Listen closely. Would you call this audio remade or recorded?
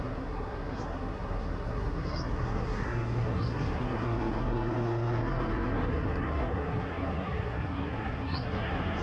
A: remade